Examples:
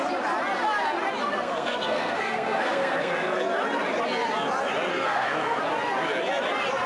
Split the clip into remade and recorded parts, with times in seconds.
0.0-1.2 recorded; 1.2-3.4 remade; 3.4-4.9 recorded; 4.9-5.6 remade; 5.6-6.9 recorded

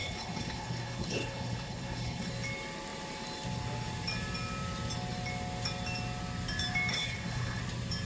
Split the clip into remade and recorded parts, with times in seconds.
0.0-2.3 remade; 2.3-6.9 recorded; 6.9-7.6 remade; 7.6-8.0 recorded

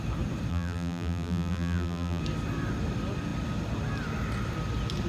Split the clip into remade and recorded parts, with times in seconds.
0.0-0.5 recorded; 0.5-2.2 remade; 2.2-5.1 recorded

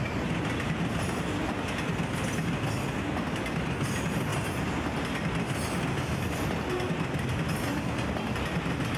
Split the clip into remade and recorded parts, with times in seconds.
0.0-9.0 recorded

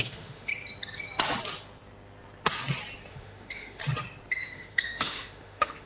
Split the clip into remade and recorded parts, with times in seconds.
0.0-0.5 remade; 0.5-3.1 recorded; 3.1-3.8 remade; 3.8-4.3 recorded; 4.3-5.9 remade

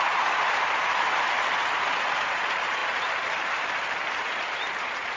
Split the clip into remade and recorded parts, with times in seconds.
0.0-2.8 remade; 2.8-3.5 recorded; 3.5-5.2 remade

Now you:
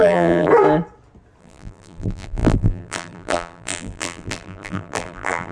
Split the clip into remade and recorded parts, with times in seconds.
0.0-0.5 remade; 0.5-1.4 recorded; 1.4-5.5 remade

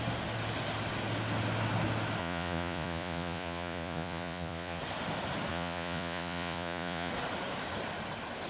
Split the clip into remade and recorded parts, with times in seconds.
0.0-2.2 recorded; 2.2-4.8 remade; 4.8-5.5 recorded; 5.5-7.1 remade; 7.1-8.5 recorded